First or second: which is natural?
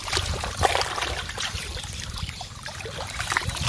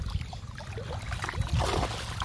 second